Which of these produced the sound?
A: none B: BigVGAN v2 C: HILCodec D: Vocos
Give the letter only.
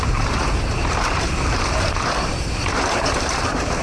B